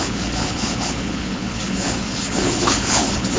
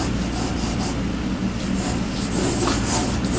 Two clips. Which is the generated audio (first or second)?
first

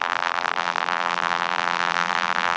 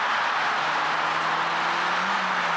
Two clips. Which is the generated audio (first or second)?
first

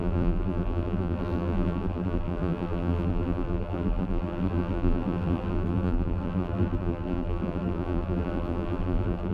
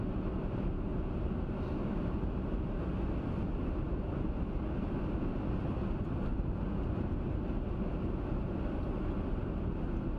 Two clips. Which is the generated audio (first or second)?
first